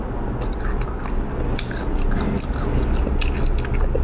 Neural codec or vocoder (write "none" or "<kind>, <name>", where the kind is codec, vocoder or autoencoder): none